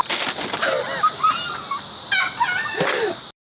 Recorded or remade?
recorded